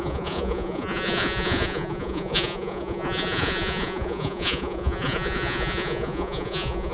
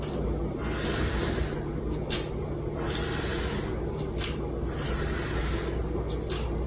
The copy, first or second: first